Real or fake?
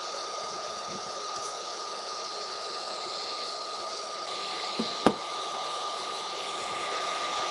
fake